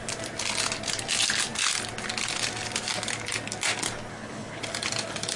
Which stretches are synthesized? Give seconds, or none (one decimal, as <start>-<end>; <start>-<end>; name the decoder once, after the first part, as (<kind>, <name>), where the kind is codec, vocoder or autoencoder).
4.1-4.6 (codec, HILCodec)